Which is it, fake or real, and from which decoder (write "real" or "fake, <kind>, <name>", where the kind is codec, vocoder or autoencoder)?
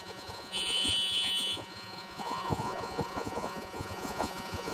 fake, vocoder, Vocos